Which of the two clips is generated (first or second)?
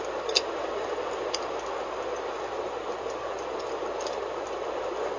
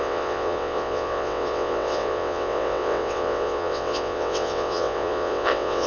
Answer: second